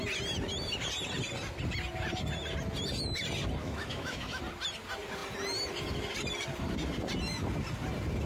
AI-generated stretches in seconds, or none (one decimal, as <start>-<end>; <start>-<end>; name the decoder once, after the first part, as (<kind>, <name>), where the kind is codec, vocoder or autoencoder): 3.6-4.4 (autoencoder, DAC-VAE)